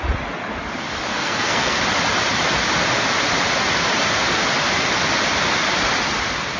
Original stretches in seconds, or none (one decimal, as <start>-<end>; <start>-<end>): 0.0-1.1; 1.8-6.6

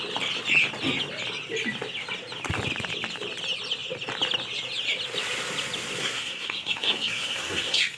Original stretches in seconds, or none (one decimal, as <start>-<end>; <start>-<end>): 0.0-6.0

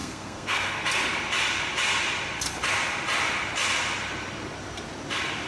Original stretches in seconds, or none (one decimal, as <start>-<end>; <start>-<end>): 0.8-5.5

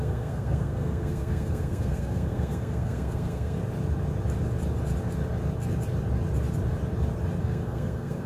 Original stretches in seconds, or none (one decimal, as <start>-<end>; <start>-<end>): 3.6-7.4

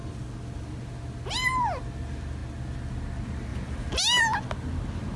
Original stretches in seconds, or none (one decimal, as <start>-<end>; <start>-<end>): 0.0-5.2

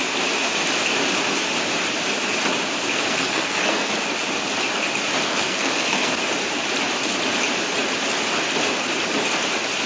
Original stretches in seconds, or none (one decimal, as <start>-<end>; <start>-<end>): 0.0-2.9; 3.9-5.3; 6.1-9.9

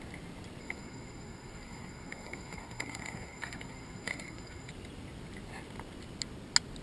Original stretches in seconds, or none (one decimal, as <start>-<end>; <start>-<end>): 0.0-0.6; 4.7-6.8

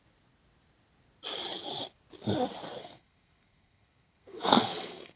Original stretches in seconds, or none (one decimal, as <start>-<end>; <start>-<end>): 0.0-2.8